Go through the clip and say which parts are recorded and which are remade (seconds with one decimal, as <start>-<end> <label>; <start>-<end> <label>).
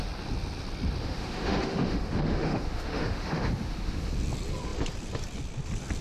0.0-1.0 recorded; 1.0-4.1 remade; 4.1-6.0 recorded